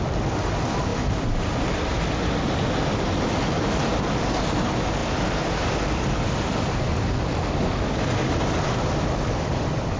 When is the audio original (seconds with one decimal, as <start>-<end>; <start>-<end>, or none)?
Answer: 0.0-10.0